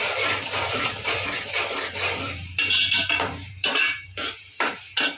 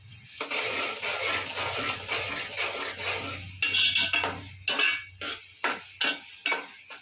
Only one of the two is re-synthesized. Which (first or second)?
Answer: first